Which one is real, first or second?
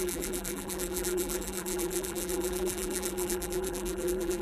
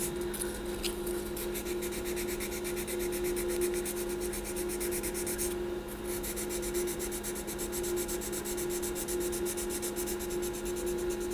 second